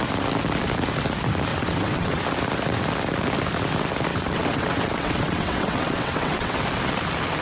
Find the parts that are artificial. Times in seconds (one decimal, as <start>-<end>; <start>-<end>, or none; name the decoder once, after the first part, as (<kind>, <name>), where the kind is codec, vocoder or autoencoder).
1.5-2.2 (vocoder, WaveNeXt); 4.1-6.6